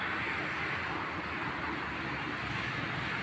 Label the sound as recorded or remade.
recorded